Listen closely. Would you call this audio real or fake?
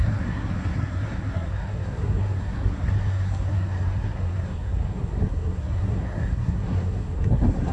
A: fake